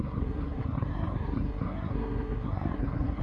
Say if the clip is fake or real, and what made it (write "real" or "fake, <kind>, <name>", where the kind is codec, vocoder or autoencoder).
fake, codec, SNAC